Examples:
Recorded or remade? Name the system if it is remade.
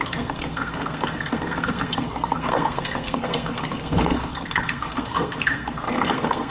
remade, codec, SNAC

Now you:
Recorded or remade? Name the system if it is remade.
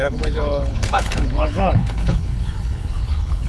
remade, codec, HILCodec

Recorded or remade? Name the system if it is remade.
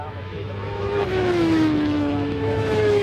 remade, autoencoder, DAC-VAE